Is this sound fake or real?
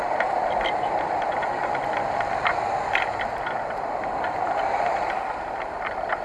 fake